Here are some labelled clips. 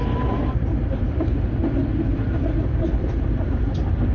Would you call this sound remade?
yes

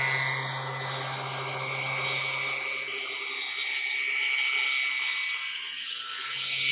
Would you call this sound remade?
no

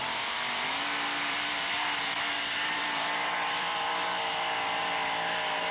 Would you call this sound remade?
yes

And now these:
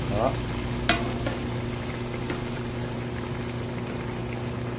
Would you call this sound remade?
no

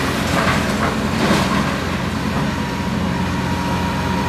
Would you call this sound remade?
no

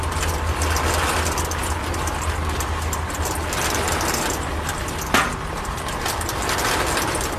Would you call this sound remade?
no